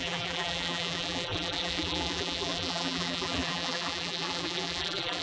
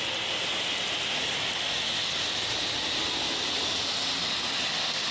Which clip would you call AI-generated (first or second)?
first